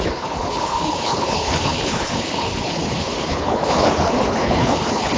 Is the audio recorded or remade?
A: remade